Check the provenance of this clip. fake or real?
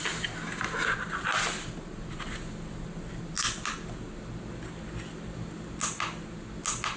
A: real